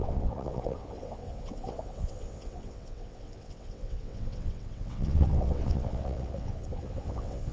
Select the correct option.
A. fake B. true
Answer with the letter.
A